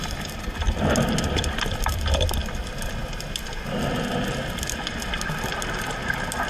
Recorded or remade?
recorded